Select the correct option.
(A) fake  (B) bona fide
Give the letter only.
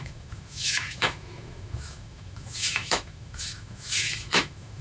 A